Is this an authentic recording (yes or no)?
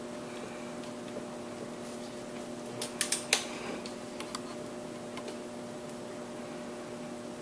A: yes